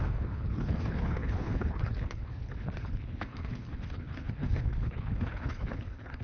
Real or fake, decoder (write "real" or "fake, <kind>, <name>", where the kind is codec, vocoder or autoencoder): fake, codec, HILCodec